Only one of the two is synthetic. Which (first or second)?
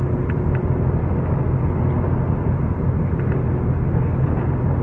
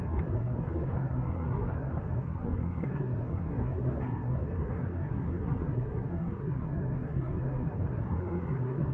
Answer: second